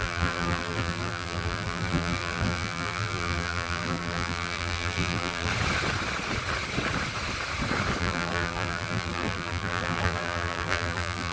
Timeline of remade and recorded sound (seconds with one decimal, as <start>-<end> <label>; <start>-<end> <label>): 0.0-5.5 remade; 5.5-8.0 recorded; 8.0-11.3 remade